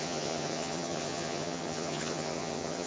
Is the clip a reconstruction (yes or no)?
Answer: yes